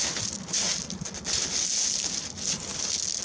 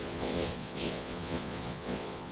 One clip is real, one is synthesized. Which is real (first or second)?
first